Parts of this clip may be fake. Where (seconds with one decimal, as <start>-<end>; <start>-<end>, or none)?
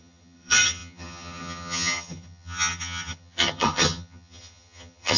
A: 0.0-5.2